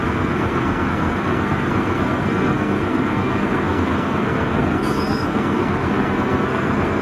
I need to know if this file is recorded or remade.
remade